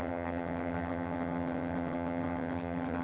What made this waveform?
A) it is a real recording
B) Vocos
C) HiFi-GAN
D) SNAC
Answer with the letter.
C